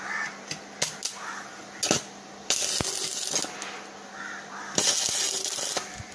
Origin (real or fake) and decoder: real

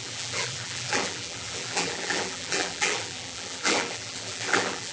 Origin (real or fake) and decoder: fake, vocoder, BigVGAN v2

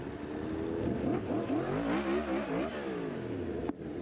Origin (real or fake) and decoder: real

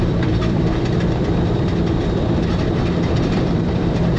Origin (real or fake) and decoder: fake, vocoder, BigVGAN v2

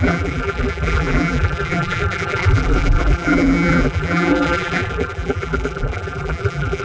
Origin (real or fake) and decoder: fake, vocoder, BigVGAN v2